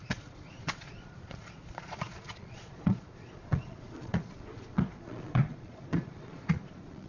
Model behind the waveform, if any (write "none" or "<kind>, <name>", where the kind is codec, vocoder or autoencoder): vocoder, Vocos